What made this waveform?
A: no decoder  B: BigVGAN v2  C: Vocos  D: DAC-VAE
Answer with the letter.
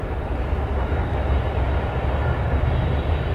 A